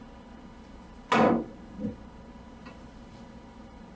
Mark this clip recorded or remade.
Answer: recorded